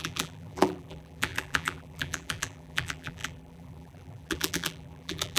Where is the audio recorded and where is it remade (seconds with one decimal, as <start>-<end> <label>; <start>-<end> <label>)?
0.0-5.4 remade